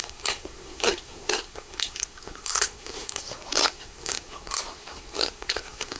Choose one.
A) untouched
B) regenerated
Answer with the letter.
B